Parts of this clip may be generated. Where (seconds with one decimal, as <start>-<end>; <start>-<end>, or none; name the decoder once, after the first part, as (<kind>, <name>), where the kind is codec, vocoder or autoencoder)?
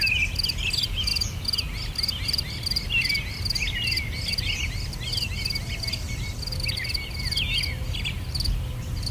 none